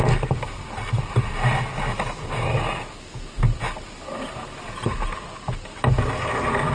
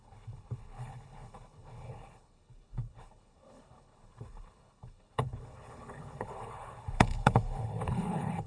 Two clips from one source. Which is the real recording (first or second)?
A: first